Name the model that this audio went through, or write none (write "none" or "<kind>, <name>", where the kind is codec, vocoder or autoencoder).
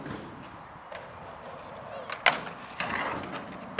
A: none